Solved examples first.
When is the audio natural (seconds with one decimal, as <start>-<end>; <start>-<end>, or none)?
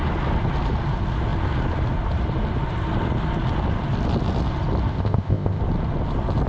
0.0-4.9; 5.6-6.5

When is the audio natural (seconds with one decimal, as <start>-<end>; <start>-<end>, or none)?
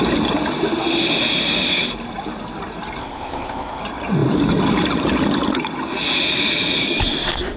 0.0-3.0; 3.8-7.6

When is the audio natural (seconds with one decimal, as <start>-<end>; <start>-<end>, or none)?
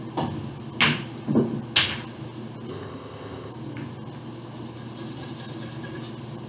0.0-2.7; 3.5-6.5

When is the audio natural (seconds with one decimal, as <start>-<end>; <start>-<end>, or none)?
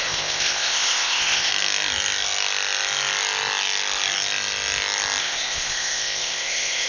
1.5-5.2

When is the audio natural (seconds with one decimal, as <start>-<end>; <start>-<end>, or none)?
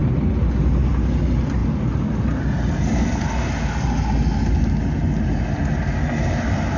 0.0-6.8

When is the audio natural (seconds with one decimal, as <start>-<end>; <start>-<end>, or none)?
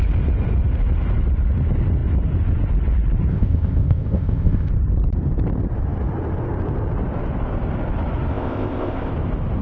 0.0-3.3; 4.7-8.3; 9.1-9.6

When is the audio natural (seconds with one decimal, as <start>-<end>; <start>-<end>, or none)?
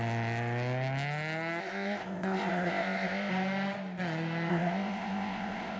0.0-1.6; 3.3-4.5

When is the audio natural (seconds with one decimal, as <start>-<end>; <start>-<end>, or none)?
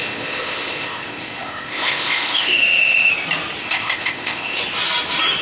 3.1-3.6; 4.6-5.4